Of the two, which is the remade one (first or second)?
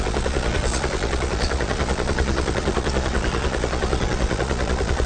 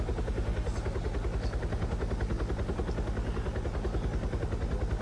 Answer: first